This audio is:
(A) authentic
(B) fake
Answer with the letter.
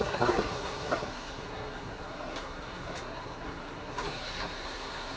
B